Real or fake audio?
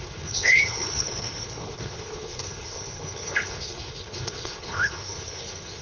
fake